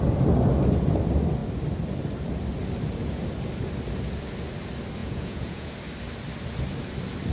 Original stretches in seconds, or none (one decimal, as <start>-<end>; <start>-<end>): 0.0-5.0; 5.7-7.3